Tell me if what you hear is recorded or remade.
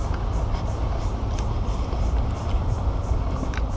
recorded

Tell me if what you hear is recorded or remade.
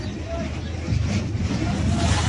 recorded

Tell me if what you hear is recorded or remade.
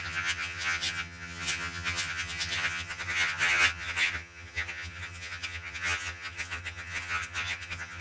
remade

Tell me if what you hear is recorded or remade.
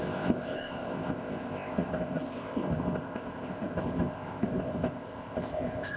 remade